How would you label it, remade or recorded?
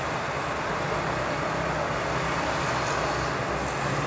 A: recorded